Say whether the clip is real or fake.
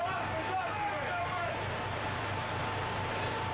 real